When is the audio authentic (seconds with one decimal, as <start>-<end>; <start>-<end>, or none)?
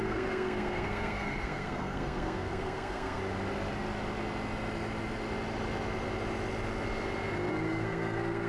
3.2-7.5